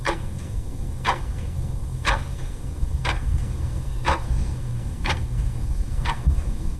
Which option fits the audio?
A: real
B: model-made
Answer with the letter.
B